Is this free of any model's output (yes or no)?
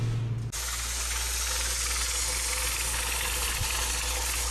yes